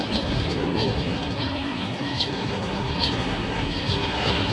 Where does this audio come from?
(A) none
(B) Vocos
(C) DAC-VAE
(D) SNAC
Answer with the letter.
D